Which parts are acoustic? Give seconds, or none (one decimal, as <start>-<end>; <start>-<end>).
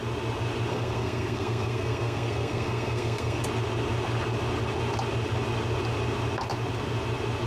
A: 0.0-0.7; 3.4-7.5